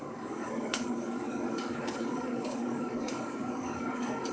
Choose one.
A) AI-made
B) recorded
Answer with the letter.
A